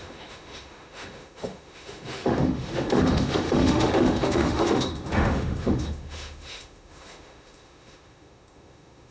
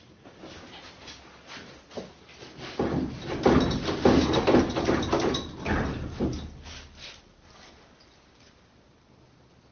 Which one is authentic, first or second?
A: second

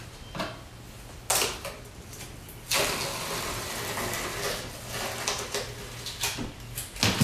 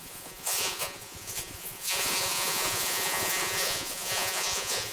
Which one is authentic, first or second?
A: first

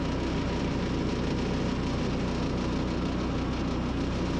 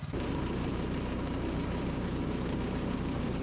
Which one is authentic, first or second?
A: first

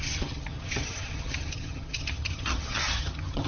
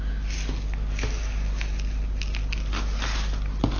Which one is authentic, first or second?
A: second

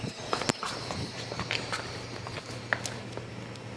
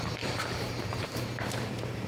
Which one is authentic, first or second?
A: first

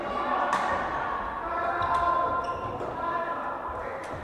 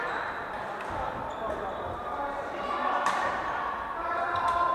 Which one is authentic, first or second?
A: first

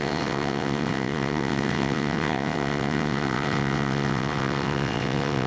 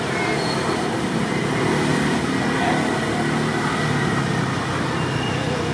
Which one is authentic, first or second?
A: second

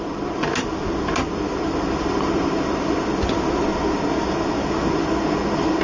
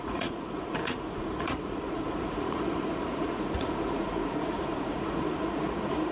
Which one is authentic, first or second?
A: first